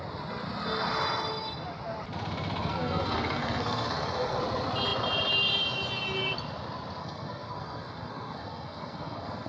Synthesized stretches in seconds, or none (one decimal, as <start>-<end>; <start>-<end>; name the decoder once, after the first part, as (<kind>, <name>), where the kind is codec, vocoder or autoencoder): 2.6-4.4 (codec, SNAC); 7.0-9.5